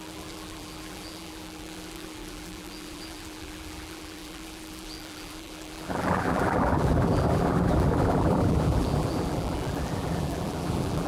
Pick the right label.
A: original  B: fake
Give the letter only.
B